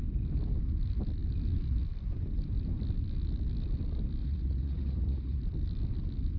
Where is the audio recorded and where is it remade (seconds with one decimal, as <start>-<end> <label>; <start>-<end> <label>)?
0.0-4.2 recorded; 4.2-5.4 remade; 5.4-6.4 recorded